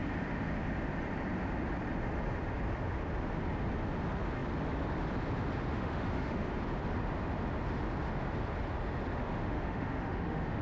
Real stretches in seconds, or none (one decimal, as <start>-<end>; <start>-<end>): 0.0-5.7; 6.5-9.2